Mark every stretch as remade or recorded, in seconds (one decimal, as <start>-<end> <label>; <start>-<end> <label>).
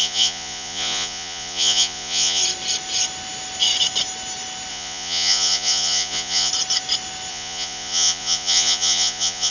0.0-2.4 remade; 2.4-4.7 recorded; 4.7-6.5 remade; 6.5-7.3 recorded; 7.3-9.5 remade